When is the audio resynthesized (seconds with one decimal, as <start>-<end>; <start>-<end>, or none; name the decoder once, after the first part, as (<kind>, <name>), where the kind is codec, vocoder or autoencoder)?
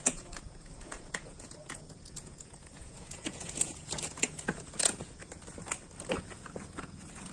0.0-5.2 (vocoder, Vocos); 6.1-7.3